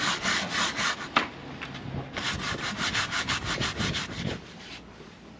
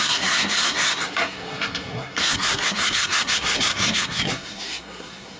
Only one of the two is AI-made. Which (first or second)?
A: second